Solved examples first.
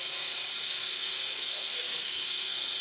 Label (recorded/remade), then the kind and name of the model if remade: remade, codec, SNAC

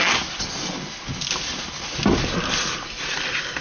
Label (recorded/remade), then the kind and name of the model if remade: recorded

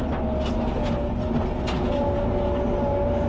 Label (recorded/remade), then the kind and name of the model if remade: recorded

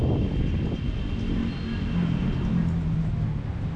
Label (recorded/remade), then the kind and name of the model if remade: recorded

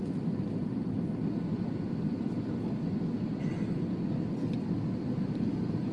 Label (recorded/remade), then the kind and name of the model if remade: recorded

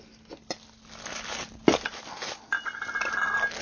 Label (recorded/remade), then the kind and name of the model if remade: recorded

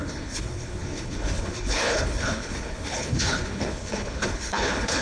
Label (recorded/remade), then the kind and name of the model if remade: remade, codec, HILCodec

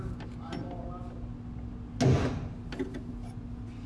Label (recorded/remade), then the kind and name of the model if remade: recorded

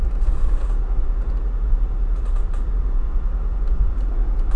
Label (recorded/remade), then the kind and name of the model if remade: remade, vocoder, BigVGAN v2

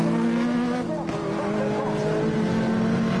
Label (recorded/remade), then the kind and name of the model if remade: recorded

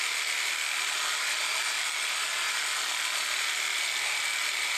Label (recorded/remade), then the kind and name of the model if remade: recorded